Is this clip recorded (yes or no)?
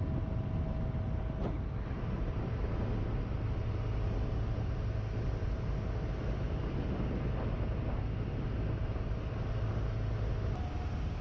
yes